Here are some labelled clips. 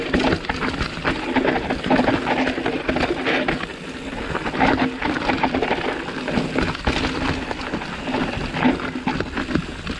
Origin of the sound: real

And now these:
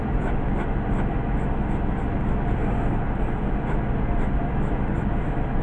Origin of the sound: real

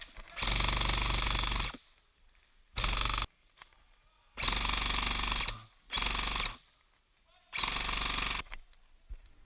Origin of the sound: real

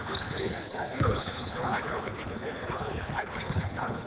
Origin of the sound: fake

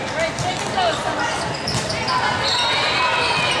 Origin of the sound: real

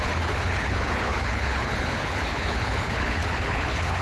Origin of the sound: fake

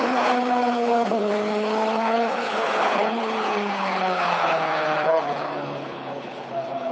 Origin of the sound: fake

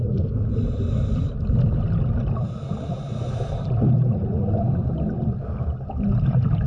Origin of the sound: real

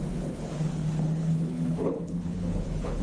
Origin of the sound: fake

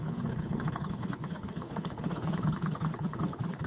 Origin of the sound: fake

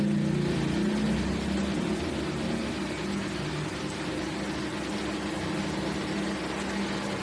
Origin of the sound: real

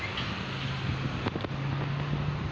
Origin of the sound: real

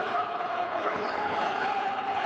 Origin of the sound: fake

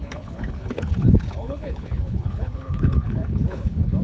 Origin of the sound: fake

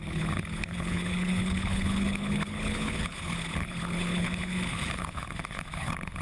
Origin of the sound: fake